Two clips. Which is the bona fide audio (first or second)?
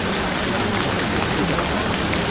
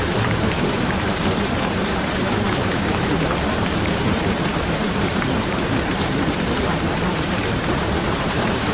first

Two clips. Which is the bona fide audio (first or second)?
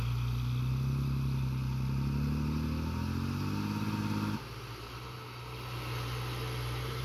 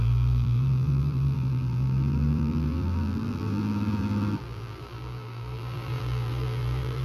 first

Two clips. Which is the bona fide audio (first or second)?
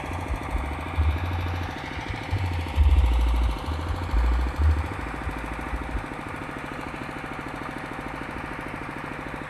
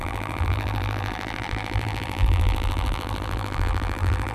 first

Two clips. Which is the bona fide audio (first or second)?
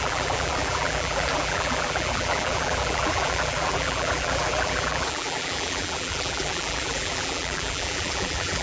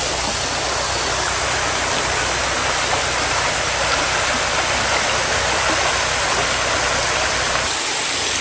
second